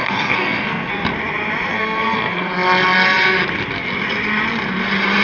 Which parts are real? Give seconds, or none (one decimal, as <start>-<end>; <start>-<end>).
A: 0.9-1.7; 2.5-5.2